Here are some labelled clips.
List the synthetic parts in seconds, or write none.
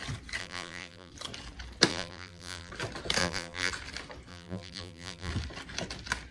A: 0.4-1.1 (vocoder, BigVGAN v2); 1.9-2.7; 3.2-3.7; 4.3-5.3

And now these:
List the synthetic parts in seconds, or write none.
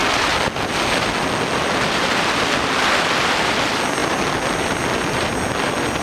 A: none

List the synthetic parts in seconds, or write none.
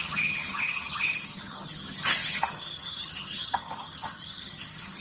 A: 0.0-5.0 (vocoder, HiFi-GAN)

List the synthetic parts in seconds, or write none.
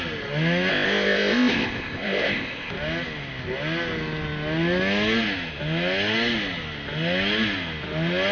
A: 0.7-2.7 (codec, ZipCodec)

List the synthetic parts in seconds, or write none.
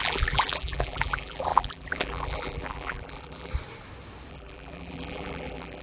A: 0.0-3.5 (vocoder, BigVGAN v2); 4.3-5.8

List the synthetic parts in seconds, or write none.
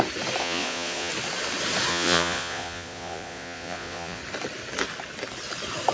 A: 0.4-1.1 (vocoder, Vocos); 1.9-4.2